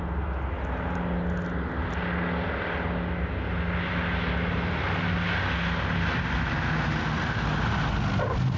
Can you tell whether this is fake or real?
real